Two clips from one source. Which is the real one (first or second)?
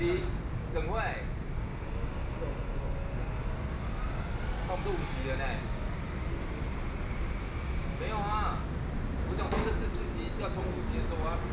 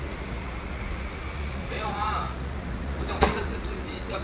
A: first